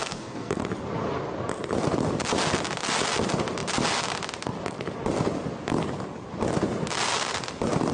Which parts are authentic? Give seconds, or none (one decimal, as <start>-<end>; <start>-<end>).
0.6-7.9